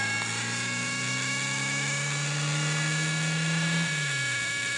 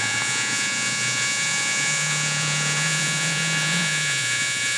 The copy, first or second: second